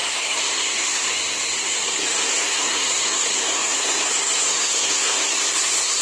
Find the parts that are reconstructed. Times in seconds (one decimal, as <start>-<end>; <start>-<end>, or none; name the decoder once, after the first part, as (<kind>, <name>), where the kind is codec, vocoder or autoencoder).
0.0-6.0 (codec, SNAC)